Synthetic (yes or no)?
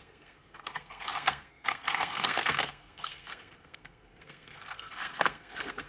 yes